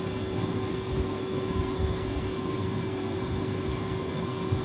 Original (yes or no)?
no